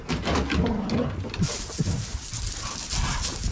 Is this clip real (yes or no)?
yes